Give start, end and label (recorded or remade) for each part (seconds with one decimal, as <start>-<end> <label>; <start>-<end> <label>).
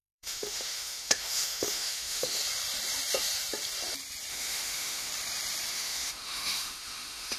0.0-2.4 remade; 2.4-4.3 recorded; 4.3-5.1 remade; 5.1-5.7 recorded; 5.7-7.4 remade